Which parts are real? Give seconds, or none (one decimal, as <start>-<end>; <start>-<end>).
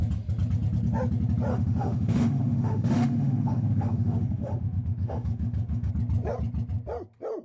0.0-1.5; 5.9-7.4